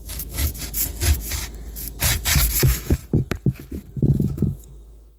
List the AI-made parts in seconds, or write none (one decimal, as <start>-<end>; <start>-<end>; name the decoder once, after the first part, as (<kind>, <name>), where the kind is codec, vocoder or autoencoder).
0.0-0.5 (autoencoder, DAC-VAE); 2.6-3.0; 4.0-5.2